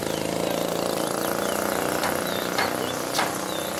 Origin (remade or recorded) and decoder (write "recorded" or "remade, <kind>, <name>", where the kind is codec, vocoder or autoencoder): recorded